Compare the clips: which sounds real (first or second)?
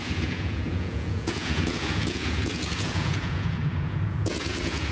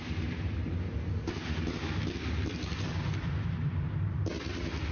second